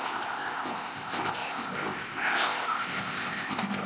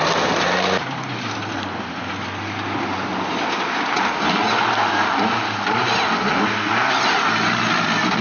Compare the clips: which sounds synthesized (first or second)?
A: first